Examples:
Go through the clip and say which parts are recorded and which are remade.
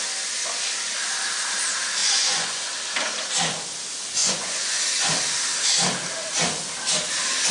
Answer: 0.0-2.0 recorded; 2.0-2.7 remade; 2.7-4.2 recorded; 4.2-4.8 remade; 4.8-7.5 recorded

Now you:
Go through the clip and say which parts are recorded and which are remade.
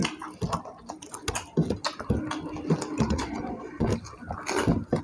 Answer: 0.0-3.0 recorded; 3.0-3.9 remade; 3.9-5.0 recorded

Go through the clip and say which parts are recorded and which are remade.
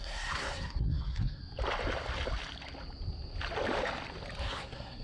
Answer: 0.0-1.4 remade; 1.4-4.4 recorded; 4.4-5.0 remade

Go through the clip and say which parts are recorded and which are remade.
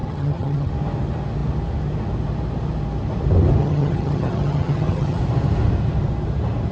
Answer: 0.0-0.7 remade; 0.7-3.6 recorded; 3.6-5.2 remade; 5.2-6.7 recorded